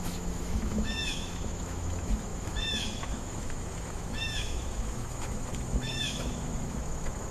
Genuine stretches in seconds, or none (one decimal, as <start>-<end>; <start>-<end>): none